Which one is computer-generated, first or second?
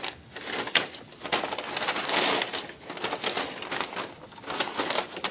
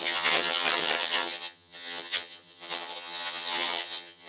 second